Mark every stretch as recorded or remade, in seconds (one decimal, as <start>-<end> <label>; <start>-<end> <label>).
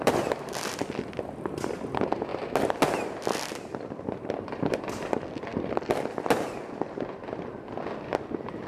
0.0-2.3 remade; 2.3-3.4 recorded; 3.4-5.5 remade; 5.5-8.7 recorded